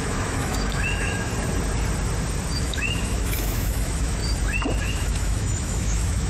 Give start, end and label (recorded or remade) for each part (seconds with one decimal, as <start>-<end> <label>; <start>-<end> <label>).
0.0-1.3 remade; 1.3-2.6 recorded; 2.6-4.2 remade; 4.2-4.8 recorded; 4.8-6.3 remade